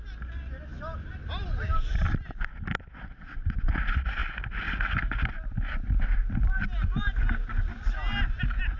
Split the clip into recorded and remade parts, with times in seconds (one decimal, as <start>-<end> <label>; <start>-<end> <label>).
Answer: 0.0-8.8 recorded